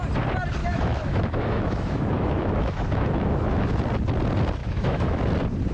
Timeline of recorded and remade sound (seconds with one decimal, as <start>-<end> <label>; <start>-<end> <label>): 0.0-0.6 recorded; 0.6-3.8 remade; 3.8-4.6 recorded; 4.6-5.2 remade; 5.2-5.7 recorded